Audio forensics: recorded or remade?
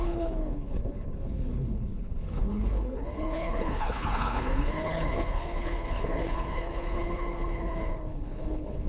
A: remade